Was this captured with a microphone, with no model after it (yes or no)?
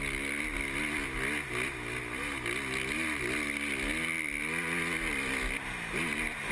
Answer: yes